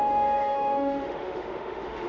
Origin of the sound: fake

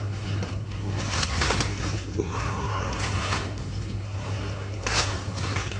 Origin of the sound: fake